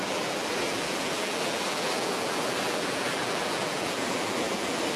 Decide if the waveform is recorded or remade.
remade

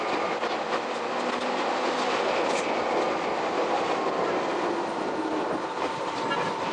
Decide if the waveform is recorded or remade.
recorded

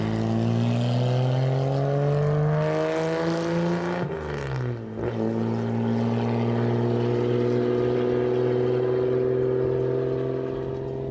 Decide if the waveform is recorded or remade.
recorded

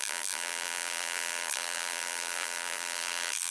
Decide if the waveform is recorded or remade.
remade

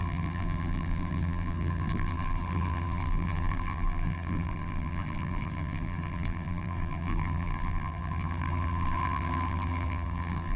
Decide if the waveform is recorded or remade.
remade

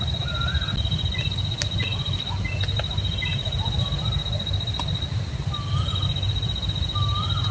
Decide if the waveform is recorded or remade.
recorded